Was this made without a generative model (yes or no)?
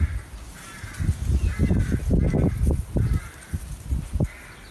yes